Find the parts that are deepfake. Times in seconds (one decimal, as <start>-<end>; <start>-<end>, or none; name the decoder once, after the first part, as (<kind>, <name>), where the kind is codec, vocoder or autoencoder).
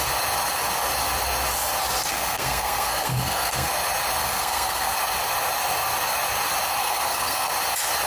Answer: 2.1-3.7 (codec, SNAC); 4.2-4.9; 6.8-7.5